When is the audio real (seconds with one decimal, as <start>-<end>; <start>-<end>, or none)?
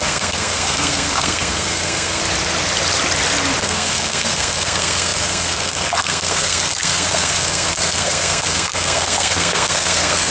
2.2-3.6